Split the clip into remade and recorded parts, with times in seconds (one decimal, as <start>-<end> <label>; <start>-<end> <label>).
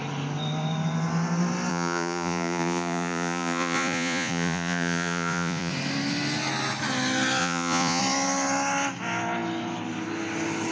0.0-1.7 recorded; 1.7-5.7 remade; 5.7-7.4 recorded; 7.4-8.0 remade; 8.0-10.7 recorded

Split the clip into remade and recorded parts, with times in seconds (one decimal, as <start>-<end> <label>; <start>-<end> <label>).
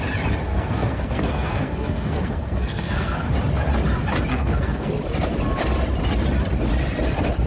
0.0-0.5 recorded; 0.5-3.3 remade; 3.3-4.3 recorded; 4.3-4.9 remade; 4.9-7.5 recorded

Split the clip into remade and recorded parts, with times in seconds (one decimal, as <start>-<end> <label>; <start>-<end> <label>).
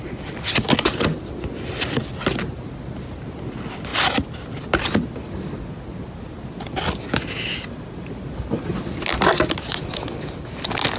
0.0-11.0 recorded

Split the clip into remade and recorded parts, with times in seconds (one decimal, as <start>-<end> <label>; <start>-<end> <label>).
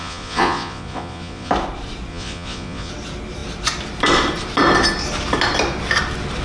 0.0-1.5 remade; 1.5-2.1 recorded; 2.1-2.9 remade; 2.9-6.4 recorded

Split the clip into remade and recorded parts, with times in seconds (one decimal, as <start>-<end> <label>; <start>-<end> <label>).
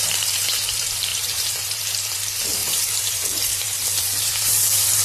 0.0-5.0 remade